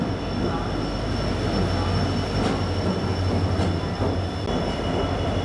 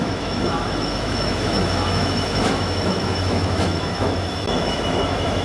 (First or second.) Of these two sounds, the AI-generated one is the second